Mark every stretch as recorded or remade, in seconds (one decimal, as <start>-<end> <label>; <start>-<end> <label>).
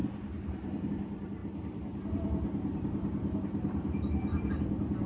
0.0-0.9 remade; 0.9-1.4 recorded; 1.4-4.5 remade; 4.5-5.1 recorded